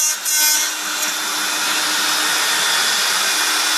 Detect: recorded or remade recorded